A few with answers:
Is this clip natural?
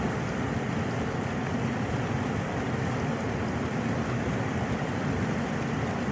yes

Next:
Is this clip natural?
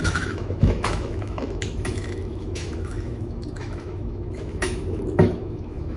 no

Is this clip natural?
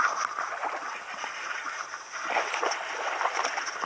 yes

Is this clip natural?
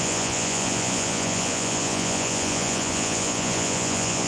no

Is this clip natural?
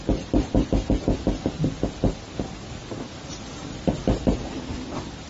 yes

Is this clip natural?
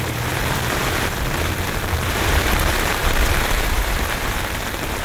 no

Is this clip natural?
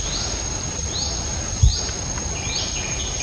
yes